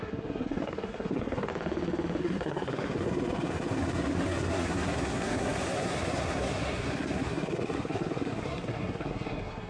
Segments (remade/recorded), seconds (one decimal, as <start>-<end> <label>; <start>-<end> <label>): 0.0-1.5 remade; 1.5-2.2 recorded; 2.2-9.7 remade